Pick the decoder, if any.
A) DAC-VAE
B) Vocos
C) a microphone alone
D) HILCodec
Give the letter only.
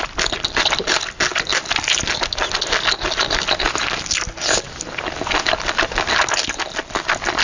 C